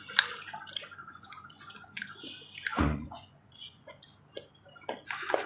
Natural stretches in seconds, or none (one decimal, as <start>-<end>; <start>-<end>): 0.0-1.0; 2.0-2.7; 4.0-5.5